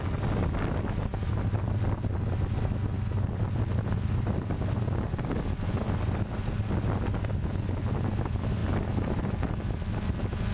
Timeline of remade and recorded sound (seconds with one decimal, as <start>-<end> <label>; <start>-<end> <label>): 0.0-10.5 recorded

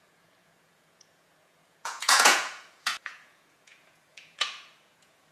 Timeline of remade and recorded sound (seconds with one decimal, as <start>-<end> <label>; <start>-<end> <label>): 0.0-5.3 remade

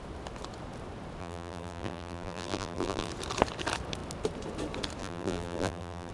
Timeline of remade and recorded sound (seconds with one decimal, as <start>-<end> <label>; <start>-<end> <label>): 0.0-1.2 recorded; 1.2-3.1 remade; 3.1-5.0 recorded; 5.0-6.1 remade

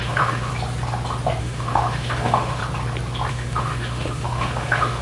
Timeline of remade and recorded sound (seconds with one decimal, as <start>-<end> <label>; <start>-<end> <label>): 0.0-0.5 remade; 0.5-1.4 recorded; 1.4-2.6 remade; 2.6-3.3 recorded; 3.3-5.0 remade

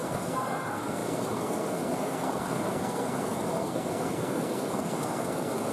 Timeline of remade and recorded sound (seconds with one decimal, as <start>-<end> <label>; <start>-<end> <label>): 0.0-5.7 remade

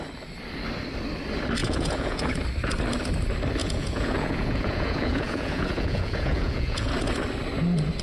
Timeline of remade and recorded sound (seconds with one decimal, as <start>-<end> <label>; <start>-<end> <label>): 0.0-1.6 recorded; 1.6-2.3 remade; 2.3-3.6 recorded; 3.6-6.9 remade; 6.9-8.0 recorded

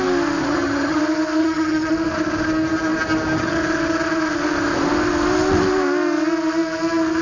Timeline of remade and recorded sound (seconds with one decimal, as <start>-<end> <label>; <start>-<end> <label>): 0.0-0.4 recorded; 0.4-1.0 remade; 1.0-1.4 recorded; 1.4-1.9 remade; 1.9-7.2 recorded

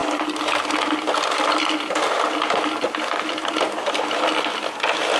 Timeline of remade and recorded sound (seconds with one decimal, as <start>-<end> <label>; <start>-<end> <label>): 0.0-5.2 recorded